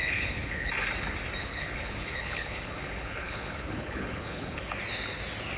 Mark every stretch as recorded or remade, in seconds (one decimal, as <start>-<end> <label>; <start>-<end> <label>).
0.0-0.7 remade; 0.7-1.4 recorded; 1.4-4.7 remade; 4.7-5.6 recorded